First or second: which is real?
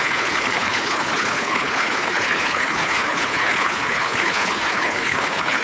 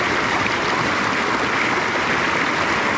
second